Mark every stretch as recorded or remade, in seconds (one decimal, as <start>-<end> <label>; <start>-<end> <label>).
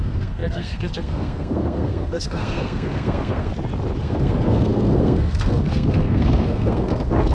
0.0-3.5 remade; 3.5-4.0 recorded; 4.0-7.3 remade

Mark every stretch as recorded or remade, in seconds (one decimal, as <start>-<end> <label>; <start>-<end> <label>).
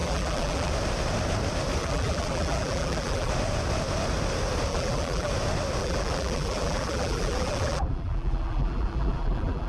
0.0-0.7 remade; 0.7-1.8 recorded; 1.8-3.3 remade; 3.3-4.7 recorded; 4.7-5.3 remade; 5.3-5.8 recorded; 5.8-9.7 remade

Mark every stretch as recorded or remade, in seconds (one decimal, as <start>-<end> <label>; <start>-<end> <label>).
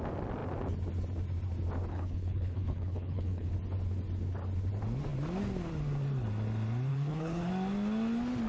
0.0-1.9 recorded; 1.9-3.5 remade; 3.5-6.9 recorded; 6.9-7.5 remade; 7.5-8.5 recorded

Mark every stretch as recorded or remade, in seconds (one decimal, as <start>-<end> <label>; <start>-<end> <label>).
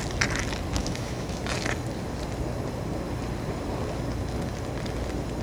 0.0-0.8 recorded; 0.8-1.4 remade; 1.4-5.4 recorded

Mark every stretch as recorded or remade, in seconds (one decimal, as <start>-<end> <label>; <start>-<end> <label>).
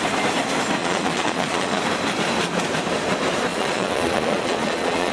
0.0-0.8 recorded; 0.8-1.8 remade; 1.8-3.5 recorded; 3.5-5.1 remade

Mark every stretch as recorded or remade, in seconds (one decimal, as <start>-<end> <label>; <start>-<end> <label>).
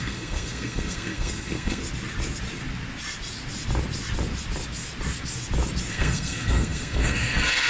0.0-1.8 remade; 1.8-5.9 recorded; 5.9-7.7 remade